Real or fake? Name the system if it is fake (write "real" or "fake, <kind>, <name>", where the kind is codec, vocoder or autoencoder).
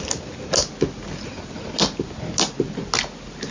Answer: real